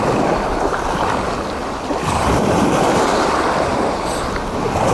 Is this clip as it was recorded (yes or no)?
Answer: yes